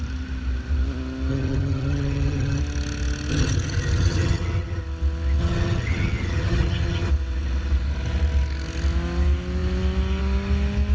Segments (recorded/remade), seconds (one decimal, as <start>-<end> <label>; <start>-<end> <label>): 0.0-1.3 recorded; 1.3-2.6 remade; 2.6-3.3 recorded; 3.3-4.8 remade; 4.8-5.4 recorded; 5.4-7.1 remade; 7.1-10.9 recorded